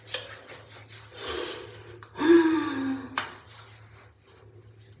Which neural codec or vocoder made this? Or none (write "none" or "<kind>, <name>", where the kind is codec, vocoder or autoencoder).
none